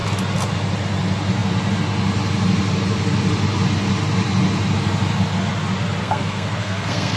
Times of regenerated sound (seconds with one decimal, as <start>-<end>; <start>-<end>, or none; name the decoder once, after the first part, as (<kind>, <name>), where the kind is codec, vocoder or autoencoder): 6.0-7.2 (codec, SNAC)